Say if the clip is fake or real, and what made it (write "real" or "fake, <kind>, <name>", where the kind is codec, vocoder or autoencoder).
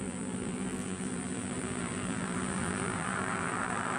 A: fake, vocoder, BigVGAN v2